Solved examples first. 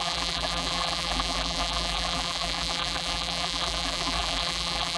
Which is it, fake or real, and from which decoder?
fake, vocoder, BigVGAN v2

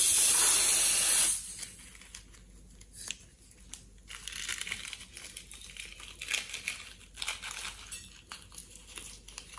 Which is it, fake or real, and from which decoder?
real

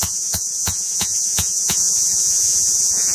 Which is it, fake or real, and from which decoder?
fake, vocoder, Vocos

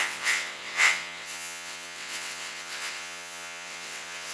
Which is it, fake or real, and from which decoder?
fake, vocoder, WaveNeXt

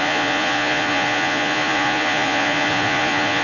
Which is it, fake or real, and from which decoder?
fake, vocoder, Vocos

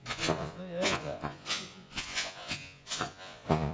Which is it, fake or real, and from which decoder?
fake, vocoder, Vocos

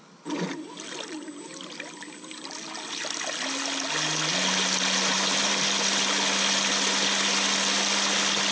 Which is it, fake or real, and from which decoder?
real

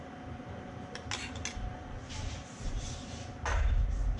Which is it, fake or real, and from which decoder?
real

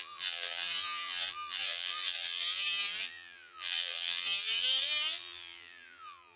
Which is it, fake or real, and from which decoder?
fake, vocoder, BigVGAN v2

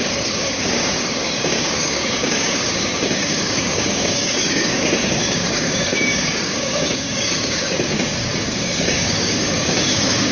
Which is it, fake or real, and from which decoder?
fake, codec, DAC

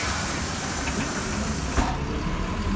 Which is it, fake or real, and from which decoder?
fake, vocoder, BigVGAN v2